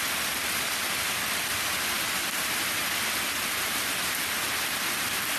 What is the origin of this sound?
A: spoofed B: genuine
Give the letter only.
A